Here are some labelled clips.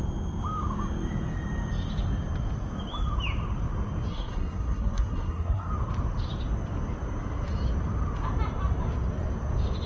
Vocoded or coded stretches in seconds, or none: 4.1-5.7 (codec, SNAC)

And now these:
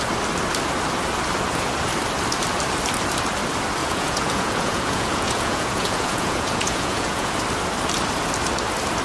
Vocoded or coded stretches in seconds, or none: 3.8-7.3 (vocoder, Vocos)

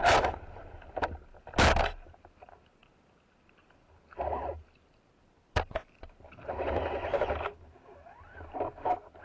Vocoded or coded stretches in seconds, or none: none

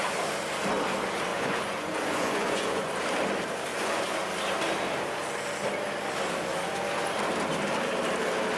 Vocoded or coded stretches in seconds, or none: 1.3-2.9 (vocoder, Vocos); 3.7-4.2

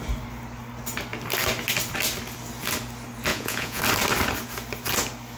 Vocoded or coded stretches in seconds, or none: 3.3-3.8 (vocoder, Vocos)

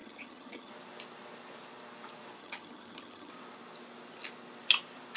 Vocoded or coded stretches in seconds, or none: 0.0-0.7 (vocoder, HiFi-GAN); 2.4-3.3

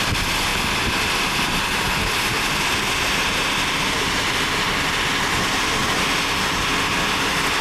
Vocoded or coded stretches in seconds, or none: none

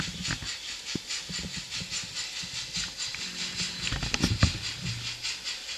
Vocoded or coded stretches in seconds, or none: none